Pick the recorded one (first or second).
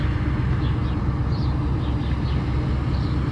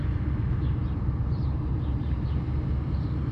first